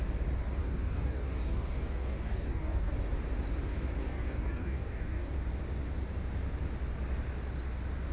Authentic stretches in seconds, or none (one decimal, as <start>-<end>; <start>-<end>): 0.0-0.6; 2.9-4.0; 5.3-8.1